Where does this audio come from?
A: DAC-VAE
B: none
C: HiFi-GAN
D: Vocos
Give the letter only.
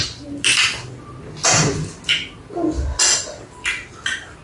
B